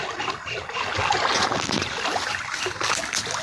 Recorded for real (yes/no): yes